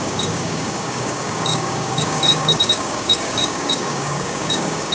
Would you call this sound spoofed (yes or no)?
yes